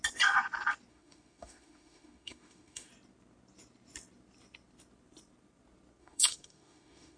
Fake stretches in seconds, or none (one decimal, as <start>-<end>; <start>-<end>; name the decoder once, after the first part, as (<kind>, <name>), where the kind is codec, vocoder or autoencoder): 0.9-2.9 (autoencoder, DAC-VAE); 6.0-7.2